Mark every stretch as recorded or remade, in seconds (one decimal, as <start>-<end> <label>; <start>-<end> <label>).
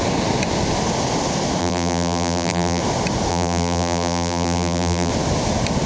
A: 0.0-1.6 recorded; 1.6-2.8 remade; 2.8-3.3 recorded; 3.3-5.1 remade; 5.1-5.9 recorded